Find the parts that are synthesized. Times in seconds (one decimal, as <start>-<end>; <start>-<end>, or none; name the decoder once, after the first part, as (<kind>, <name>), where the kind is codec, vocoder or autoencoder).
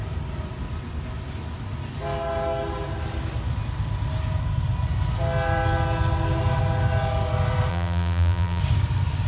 7.7-8.6 (vocoder, BigVGAN v2)